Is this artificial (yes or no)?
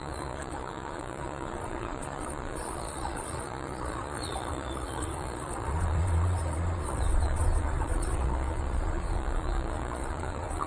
yes